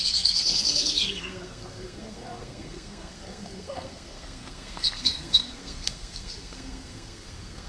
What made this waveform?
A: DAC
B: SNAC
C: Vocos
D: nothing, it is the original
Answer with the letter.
B